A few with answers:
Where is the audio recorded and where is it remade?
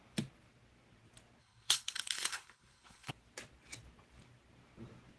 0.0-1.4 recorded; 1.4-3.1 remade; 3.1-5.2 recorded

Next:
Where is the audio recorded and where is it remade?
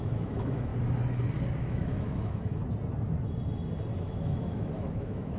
0.0-0.7 remade; 0.7-1.6 recorded; 1.6-2.6 remade; 2.6-4.0 recorded; 4.0-5.4 remade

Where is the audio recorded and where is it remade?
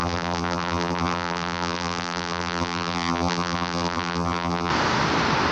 0.0-4.7 remade; 4.7-5.5 recorded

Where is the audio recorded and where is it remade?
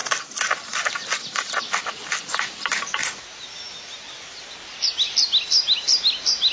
0.0-6.5 recorded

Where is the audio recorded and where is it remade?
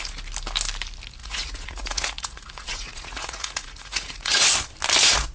0.0-1.2 recorded; 1.2-4.4 remade; 4.4-5.3 recorded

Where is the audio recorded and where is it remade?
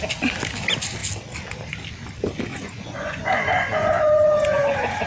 0.0-2.5 recorded; 2.5-5.1 remade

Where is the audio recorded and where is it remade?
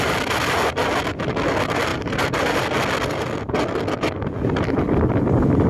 0.0-1.9 recorded; 1.9-2.6 remade; 2.6-5.7 recorded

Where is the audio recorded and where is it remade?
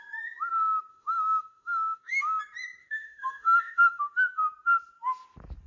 0.0-0.9 recorded; 0.9-2.4 remade; 2.4-2.8 recorded; 2.8-4.0 remade; 4.0-5.7 recorded